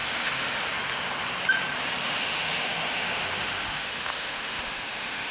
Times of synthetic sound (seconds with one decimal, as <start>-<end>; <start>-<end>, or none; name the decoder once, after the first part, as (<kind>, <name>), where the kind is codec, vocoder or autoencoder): 0.0-0.6 (autoencoder, DAC-VAE); 2.0-5.3